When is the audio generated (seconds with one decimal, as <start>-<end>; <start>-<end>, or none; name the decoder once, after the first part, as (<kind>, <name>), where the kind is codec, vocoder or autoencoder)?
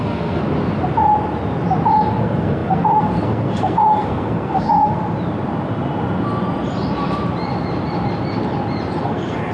0.0-0.4 (codec, SNAC); 2.2-5.0; 9.0-9.5